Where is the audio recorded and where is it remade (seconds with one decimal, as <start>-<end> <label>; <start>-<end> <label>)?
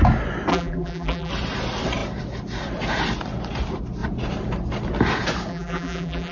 0.0-0.5 recorded; 0.5-1.3 remade; 1.3-5.5 recorded; 5.5-6.3 remade